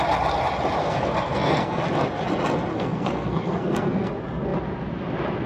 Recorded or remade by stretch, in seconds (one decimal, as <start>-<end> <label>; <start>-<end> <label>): 0.0-0.8 recorded; 0.8-1.8 remade; 1.8-2.7 recorded; 2.7-4.1 remade; 4.1-5.5 recorded